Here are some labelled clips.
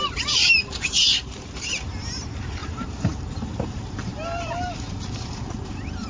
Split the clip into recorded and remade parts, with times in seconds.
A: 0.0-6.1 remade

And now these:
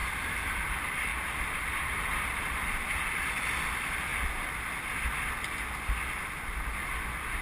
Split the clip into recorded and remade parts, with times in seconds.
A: 0.0-0.7 recorded; 0.7-4.1 remade; 4.1-7.4 recorded

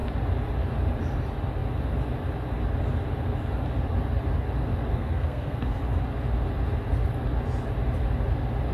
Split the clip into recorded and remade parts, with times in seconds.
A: 0.0-4.9 recorded; 4.9-5.8 remade; 5.8-8.7 recorded

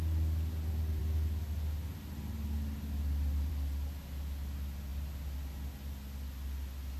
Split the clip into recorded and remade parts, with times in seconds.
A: 0.0-7.0 recorded

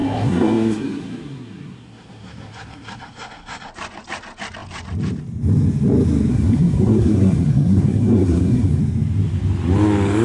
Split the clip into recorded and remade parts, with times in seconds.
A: 0.0-3.7 remade; 3.7-6.3 recorded; 6.3-8.8 remade; 8.8-10.2 recorded

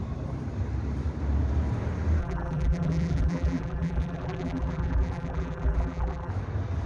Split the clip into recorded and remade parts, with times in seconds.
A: 0.0-2.2 recorded; 2.2-6.3 remade; 6.3-6.9 recorded

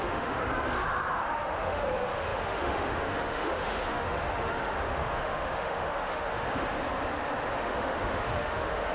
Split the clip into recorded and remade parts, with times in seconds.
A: 0.0-0.5 remade; 0.5-1.1 recorded; 1.1-6.8 remade; 6.8-7.6 recorded; 7.6-8.9 remade

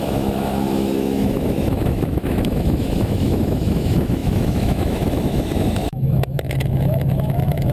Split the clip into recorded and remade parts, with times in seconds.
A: 0.0-7.7 remade